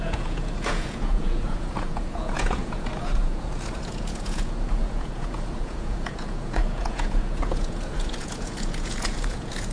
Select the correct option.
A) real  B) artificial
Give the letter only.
B